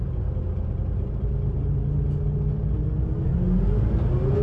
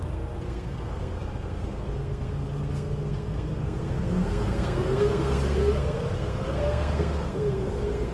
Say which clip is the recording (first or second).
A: first